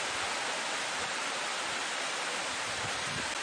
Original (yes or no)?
yes